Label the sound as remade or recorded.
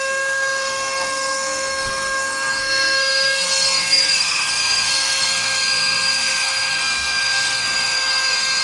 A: remade